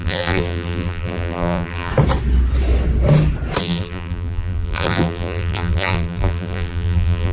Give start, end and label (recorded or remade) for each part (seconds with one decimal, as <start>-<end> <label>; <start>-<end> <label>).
0.0-1.9 remade; 1.9-3.6 recorded; 3.6-7.3 remade